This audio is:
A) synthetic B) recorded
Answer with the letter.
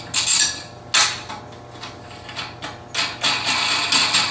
B